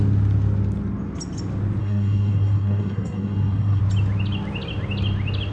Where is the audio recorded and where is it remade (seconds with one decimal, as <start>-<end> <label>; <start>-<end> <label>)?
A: 0.0-1.8 recorded; 1.8-3.8 remade; 3.8-5.5 recorded